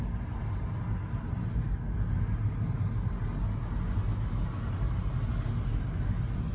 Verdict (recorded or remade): recorded